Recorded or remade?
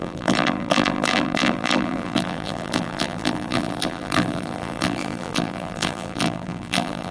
remade